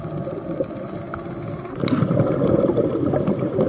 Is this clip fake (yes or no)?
no